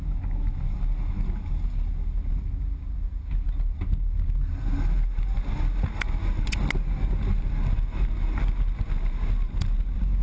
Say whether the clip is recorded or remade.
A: recorded